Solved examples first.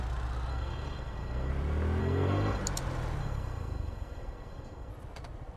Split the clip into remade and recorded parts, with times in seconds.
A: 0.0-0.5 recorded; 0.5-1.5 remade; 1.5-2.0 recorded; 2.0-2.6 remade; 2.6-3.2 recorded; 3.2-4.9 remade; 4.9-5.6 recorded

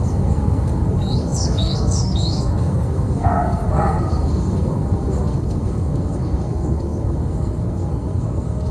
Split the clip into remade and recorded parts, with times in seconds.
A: 0.0-8.7 remade